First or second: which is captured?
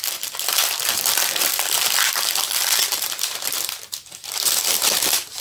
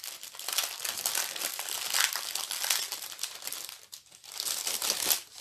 second